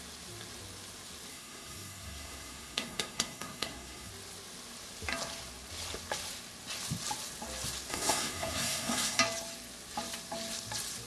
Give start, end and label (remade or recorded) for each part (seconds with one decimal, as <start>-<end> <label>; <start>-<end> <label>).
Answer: 0.0-1.3 recorded; 1.3-4.1 remade; 4.1-7.9 recorded; 7.9-9.2 remade; 9.2-11.1 recorded